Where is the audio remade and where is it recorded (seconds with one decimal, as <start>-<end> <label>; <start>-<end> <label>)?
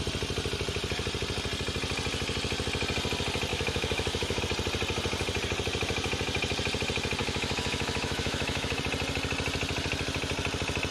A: 0.0-3.5 recorded; 3.5-4.4 remade; 4.4-7.2 recorded; 7.2-8.8 remade; 8.8-10.9 recorded